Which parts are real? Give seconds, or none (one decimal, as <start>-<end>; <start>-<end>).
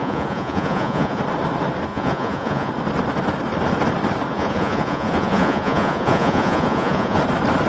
1.2-1.9; 2.7-4.3; 7.2-7.7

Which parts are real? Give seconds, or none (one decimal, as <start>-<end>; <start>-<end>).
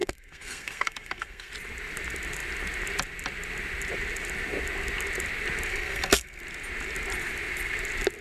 1.5-5.7; 6.4-8.2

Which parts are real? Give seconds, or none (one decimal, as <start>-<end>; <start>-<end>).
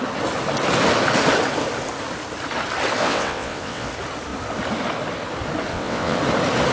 0.0-3.0; 3.9-5.7; 6.2-6.7